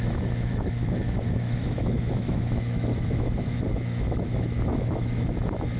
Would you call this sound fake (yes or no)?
yes